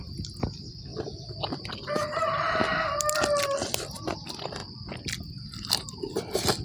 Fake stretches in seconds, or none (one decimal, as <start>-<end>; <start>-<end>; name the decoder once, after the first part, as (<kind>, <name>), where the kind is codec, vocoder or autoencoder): none